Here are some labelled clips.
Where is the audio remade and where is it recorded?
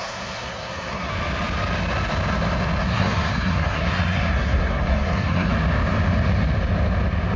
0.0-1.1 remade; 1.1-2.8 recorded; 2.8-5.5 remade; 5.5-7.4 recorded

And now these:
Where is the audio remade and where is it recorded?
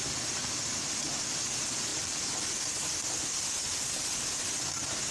0.0-0.4 recorded; 0.4-1.1 remade; 1.1-1.9 recorded; 1.9-2.6 remade; 2.6-5.1 recorded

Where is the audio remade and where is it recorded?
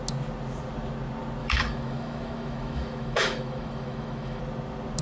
0.0-1.4 recorded; 1.4-4.4 remade; 4.4-5.0 recorded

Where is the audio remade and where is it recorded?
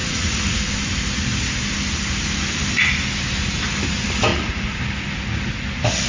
0.0-0.6 remade; 0.6-4.3 recorded; 4.3-4.8 remade; 4.8-6.1 recorded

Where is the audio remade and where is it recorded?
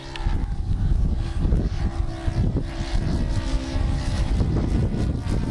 0.0-0.4 recorded; 0.4-1.8 remade; 1.8-3.5 recorded; 3.5-4.3 remade; 4.3-5.5 recorded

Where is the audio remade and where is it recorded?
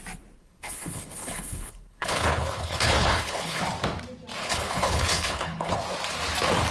0.0-0.4 recorded; 0.4-3.6 remade; 3.6-4.4 recorded; 4.4-5.8 remade; 5.8-6.7 recorded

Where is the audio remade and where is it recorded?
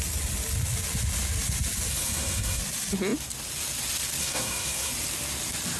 0.0-1.9 recorded; 1.9-2.6 remade; 2.6-4.2 recorded; 4.2-4.9 remade; 4.9-5.8 recorded